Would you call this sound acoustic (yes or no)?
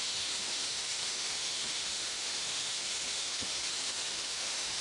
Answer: no